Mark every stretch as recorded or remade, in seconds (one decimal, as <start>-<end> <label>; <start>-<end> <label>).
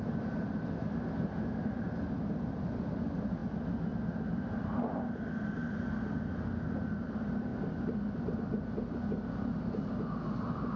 0.0-10.8 recorded